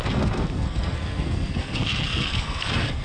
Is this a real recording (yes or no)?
no